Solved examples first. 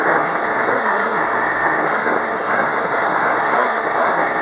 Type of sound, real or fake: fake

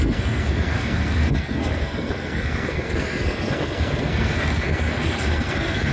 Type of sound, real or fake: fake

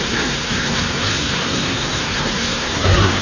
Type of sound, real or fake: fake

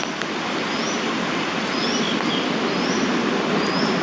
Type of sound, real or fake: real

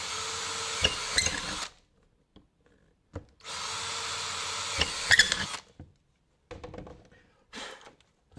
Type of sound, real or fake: real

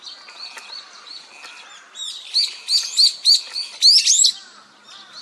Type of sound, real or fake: real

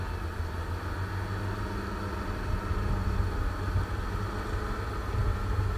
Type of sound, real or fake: real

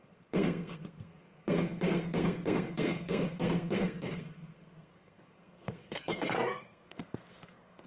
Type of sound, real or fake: fake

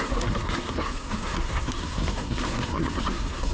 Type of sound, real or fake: fake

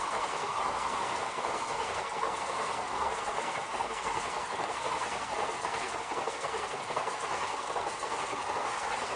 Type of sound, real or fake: fake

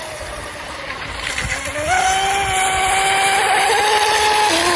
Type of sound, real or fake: real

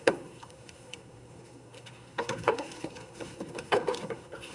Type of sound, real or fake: fake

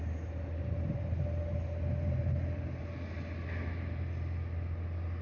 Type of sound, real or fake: real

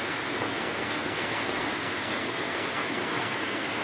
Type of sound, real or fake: fake